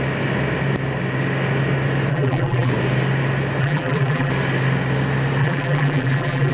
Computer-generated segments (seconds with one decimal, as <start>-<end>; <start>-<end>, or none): 2.1-2.7; 3.6-4.3; 5.4-6.5